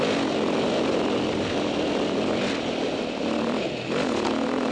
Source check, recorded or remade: recorded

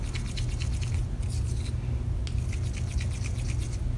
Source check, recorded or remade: recorded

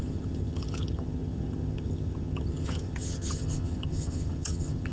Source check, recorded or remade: remade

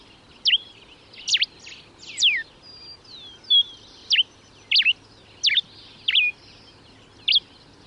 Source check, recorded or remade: recorded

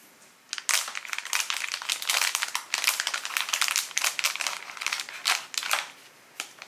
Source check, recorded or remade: recorded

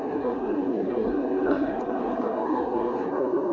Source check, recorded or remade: remade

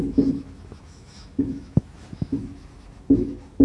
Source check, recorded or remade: remade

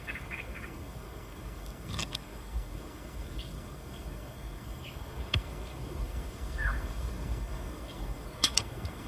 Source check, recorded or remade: remade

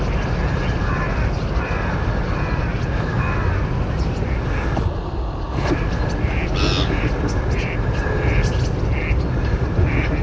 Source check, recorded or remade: recorded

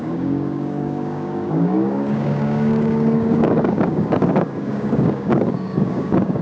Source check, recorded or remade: remade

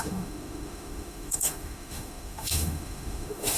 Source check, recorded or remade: remade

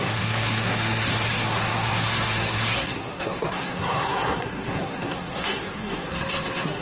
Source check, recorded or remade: remade